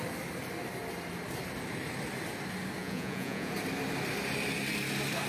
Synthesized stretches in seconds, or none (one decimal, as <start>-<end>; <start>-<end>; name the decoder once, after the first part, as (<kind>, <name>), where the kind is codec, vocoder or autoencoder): 2.8-3.5 (vocoder, Vocos)